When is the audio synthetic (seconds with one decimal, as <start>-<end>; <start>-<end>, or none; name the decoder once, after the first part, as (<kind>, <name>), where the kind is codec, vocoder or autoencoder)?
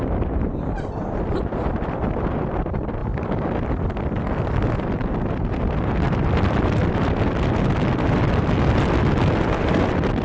0.0-3.0 (vocoder, BigVGAN v2); 6.3-6.8; 8.7-10.2